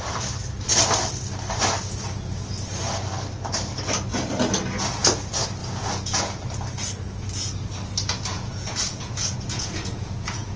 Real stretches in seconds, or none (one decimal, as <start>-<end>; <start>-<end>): 0.0-5.6; 6.2-8.3